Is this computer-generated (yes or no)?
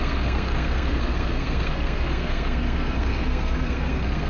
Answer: yes